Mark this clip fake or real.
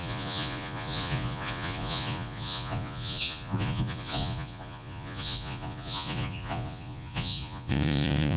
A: fake